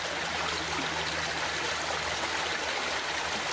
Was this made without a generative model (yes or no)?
yes